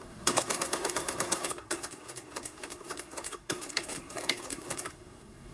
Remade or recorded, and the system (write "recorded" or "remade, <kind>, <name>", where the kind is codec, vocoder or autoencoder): remade, codec, SNAC